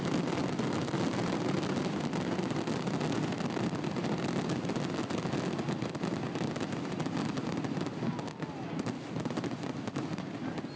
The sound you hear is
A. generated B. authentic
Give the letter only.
B